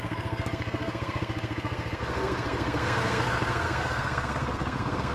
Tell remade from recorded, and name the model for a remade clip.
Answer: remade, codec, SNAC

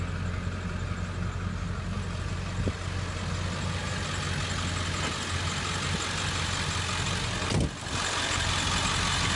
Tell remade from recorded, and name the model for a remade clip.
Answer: recorded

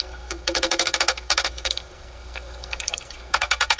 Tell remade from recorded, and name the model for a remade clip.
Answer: remade, codec, SNAC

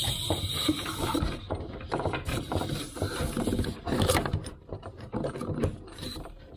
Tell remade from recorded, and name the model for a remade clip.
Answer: remade, vocoder, BigVGAN v2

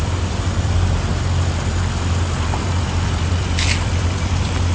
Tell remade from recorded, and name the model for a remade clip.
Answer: remade, vocoder, BigVGAN v2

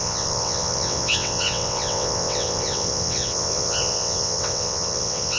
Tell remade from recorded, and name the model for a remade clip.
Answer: remade, vocoder, WaveNeXt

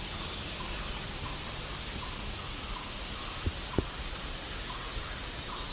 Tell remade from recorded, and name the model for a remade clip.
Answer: recorded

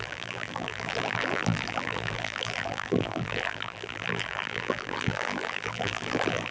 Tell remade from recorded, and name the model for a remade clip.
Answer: remade, vocoder, BigVGAN v2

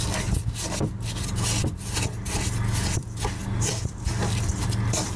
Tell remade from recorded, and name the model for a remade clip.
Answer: recorded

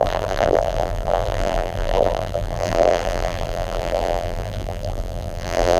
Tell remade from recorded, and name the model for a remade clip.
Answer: remade, vocoder, BigVGAN v2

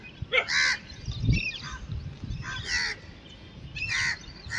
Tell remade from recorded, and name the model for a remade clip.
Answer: recorded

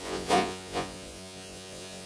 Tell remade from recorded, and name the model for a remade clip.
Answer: remade, vocoder, Vocos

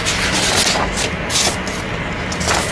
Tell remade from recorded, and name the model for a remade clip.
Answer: recorded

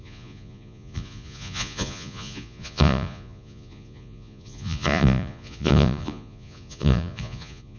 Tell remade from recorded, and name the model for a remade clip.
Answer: remade, vocoder, Vocos